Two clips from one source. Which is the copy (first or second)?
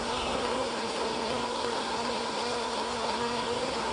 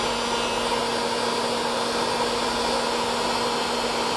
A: first